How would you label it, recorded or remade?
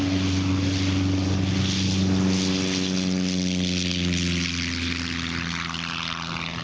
recorded